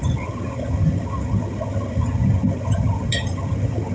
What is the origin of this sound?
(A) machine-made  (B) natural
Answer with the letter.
A